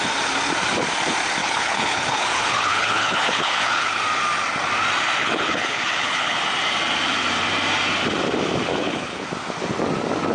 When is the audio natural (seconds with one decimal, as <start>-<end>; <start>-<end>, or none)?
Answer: 0.0-1.4; 4.0-5.2; 6.4-8.7; 9.3-10.3